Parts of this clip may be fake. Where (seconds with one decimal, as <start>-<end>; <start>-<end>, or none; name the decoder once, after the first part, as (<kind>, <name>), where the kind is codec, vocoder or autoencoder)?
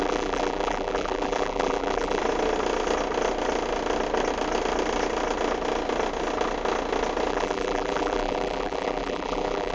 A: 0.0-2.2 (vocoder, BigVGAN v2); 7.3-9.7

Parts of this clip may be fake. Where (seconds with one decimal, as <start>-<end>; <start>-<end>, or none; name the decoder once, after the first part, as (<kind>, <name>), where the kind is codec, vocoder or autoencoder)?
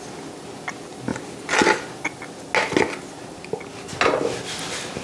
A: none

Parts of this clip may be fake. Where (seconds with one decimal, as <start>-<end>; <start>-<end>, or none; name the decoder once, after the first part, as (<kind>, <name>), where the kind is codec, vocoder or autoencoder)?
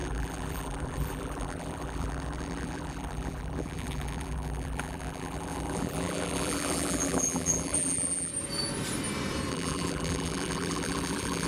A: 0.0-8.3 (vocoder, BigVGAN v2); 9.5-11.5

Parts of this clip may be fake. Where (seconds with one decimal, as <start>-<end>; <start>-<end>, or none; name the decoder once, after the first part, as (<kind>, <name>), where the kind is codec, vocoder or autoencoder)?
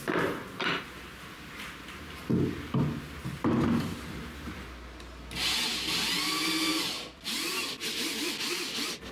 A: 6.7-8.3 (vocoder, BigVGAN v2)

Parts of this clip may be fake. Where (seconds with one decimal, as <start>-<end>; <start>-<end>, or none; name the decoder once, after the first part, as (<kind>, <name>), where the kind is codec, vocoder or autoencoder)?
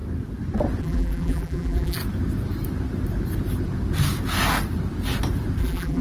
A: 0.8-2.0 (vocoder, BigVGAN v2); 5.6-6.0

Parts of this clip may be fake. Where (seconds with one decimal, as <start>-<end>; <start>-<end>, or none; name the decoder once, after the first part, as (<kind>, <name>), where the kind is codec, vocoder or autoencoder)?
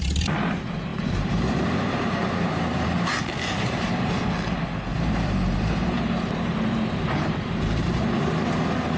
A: 0.9-3.9 (vocoder, BigVGAN v2); 4.9-8.0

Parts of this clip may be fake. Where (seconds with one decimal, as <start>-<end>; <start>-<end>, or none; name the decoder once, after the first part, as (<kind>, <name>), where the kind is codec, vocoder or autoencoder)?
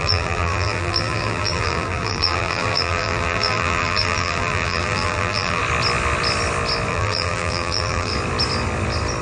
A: 0.0-5.6 (vocoder, BigVGAN v2); 6.9-8.1